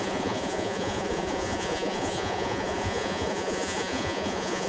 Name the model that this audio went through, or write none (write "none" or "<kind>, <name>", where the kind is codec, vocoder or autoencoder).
vocoder, Vocos